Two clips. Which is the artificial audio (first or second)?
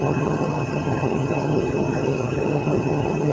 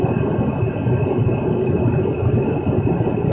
first